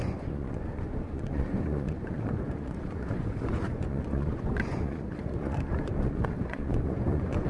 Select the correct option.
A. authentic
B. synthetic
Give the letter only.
B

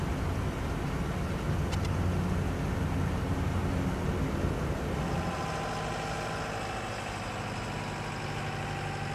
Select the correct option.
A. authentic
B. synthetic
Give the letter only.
A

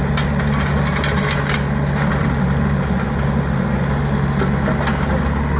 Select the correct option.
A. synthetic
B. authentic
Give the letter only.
B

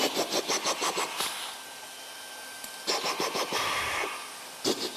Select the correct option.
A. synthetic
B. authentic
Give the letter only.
B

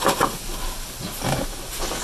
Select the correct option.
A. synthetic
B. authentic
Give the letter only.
B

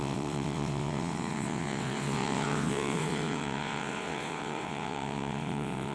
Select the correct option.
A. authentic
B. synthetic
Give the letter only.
B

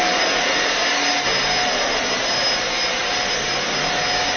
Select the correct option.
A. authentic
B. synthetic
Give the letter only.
A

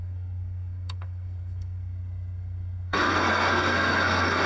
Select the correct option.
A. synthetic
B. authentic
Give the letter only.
A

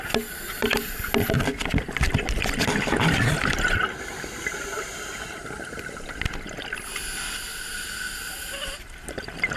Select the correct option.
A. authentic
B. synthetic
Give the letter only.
A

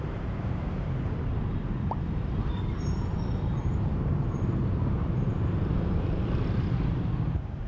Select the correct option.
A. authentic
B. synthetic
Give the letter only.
B